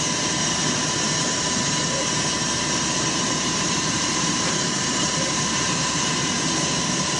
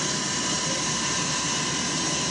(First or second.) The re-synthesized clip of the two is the first